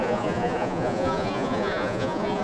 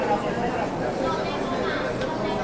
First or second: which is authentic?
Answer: second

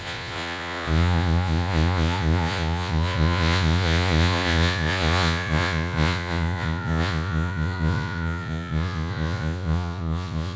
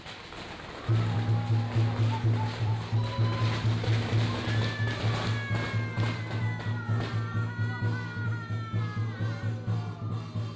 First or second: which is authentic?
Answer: second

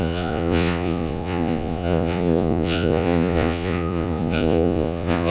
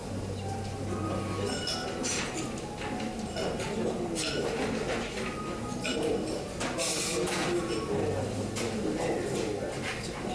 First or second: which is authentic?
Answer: second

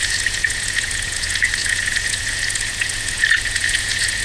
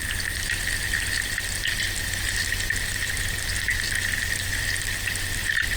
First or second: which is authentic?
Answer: second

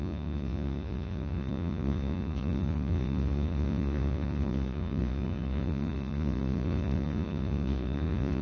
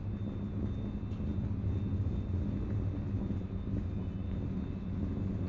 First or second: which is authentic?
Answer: second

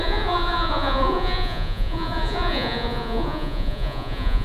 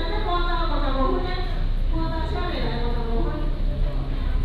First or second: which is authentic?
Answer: second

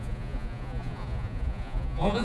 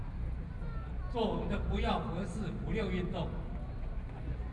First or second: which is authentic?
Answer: second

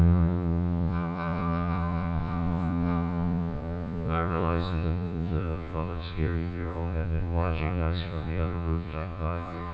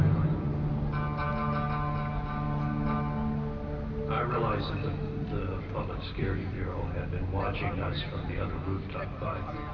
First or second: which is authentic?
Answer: second